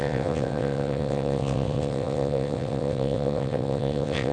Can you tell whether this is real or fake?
fake